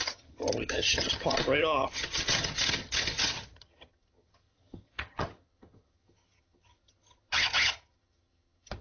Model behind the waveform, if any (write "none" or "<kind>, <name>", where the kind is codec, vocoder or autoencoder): vocoder, HiFi-GAN